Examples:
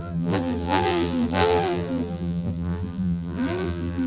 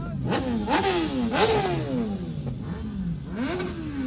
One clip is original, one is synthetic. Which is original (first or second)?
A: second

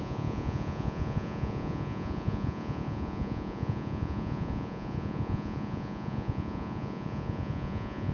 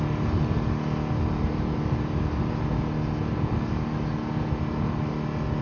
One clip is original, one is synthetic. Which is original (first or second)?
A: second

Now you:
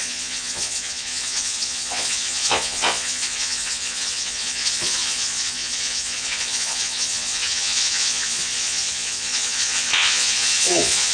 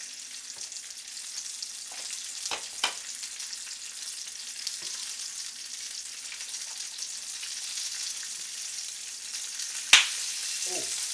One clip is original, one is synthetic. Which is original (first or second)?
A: second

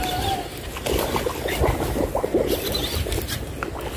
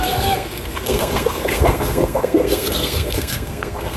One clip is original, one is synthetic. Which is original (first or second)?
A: first